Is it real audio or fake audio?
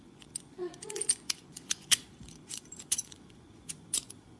fake